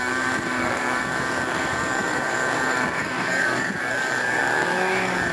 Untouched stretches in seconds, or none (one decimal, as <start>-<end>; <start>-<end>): none